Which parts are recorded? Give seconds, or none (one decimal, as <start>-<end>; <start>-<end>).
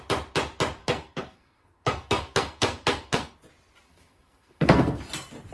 0.0-0.8; 3.3-3.9; 5.0-5.5